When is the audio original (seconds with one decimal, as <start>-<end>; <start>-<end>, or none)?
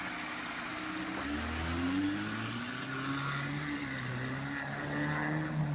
0.0-5.7